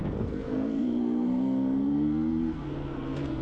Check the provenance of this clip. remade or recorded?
remade